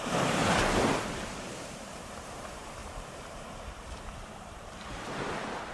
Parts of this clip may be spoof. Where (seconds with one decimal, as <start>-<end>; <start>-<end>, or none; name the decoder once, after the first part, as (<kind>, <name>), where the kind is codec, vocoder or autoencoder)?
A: 0.0-0.4 (vocoder, BigVGAN v2); 1.1-5.7